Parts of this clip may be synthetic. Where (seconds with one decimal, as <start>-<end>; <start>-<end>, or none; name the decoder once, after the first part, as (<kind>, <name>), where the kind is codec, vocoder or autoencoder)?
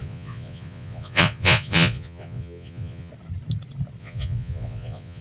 0.0-3.1 (vocoder, Vocos); 4.0-5.2